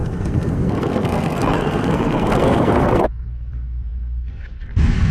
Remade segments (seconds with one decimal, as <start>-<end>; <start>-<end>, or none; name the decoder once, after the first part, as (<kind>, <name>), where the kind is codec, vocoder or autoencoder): 0.0-5.1 (codec, SNAC)